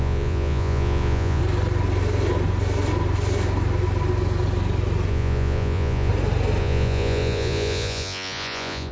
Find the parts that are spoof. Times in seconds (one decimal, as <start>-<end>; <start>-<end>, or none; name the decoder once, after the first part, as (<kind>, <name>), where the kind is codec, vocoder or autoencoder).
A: 0.0-1.4 (vocoder, Vocos); 5.1-6.1; 6.6-8.9